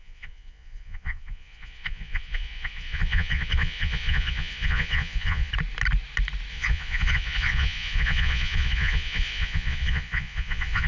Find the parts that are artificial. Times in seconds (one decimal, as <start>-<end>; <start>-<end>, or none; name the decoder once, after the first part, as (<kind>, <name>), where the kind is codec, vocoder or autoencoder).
0.0-5.5 (vocoder, Vocos); 6.5-10.9